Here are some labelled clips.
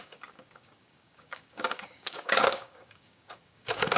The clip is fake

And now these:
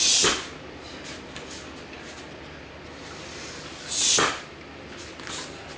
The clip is real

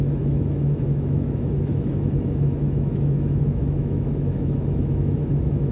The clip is fake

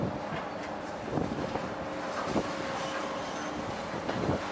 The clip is real